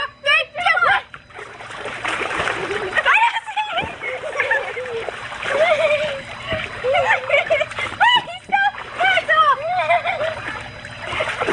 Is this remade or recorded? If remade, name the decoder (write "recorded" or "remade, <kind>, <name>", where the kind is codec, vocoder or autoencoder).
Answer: remade, vocoder, BigVGAN v2